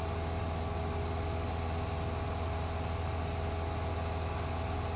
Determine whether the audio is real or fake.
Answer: real